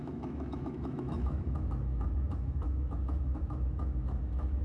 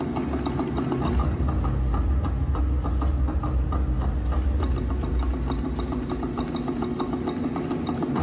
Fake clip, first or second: first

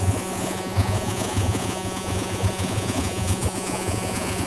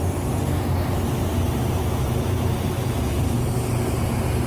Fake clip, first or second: first